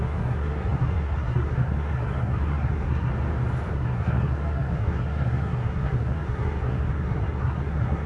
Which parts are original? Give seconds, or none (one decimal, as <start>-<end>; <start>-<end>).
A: 3.1-3.7